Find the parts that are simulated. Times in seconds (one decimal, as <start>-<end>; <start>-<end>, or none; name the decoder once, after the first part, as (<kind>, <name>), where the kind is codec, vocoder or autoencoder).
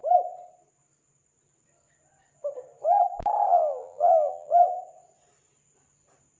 3.5-4.8 (vocoder, BigVGAN v2)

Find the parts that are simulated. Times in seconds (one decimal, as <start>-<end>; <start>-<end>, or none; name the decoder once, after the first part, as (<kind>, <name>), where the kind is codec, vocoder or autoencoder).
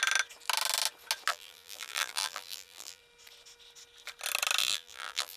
1.3-3.0 (vocoder, BigVGAN v2); 4.6-5.4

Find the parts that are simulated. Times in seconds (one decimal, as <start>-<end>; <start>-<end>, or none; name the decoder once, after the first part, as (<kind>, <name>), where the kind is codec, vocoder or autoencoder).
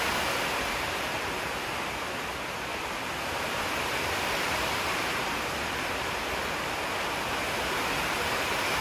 2.7-6.2 (vocoder, BigVGAN v2)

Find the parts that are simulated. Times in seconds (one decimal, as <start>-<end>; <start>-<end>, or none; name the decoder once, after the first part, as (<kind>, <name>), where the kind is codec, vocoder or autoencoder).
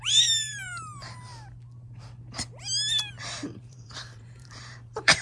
0.0-1.3 (vocoder, BigVGAN v2); 3.2-5.2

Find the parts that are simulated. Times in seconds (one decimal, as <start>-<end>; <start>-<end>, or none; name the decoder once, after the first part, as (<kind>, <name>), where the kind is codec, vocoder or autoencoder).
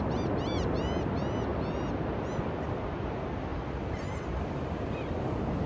3.5-5.1 (vocoder, BigVGAN v2)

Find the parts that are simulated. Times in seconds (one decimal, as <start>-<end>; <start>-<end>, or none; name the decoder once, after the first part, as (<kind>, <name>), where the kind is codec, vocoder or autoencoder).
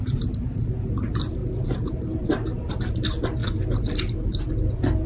0.0-3.4 (vocoder, BigVGAN v2)